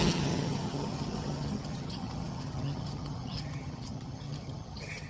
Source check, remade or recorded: remade